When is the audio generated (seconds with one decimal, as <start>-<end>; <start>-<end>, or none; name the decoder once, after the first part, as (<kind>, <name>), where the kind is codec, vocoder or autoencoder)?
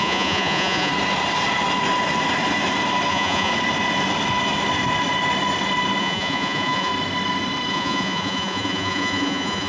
0.0-0.9 (vocoder, Vocos); 3.1-3.5; 6.0-6.9; 7.7-9.7